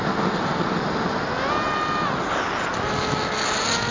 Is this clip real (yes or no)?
yes